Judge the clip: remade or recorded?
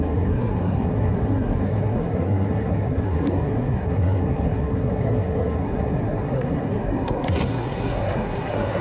remade